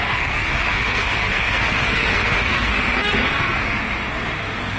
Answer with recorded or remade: remade